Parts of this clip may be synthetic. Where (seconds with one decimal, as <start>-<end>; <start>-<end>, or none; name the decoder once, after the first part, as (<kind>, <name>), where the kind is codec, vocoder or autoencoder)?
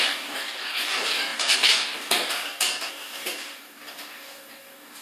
0.0-5.0 (codec, DAC)